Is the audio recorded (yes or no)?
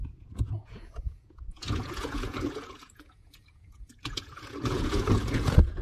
no